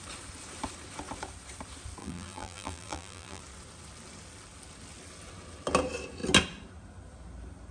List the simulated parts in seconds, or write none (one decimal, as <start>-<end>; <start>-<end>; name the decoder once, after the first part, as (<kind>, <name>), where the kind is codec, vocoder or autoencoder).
2.0-3.4 (vocoder, BigVGAN v2)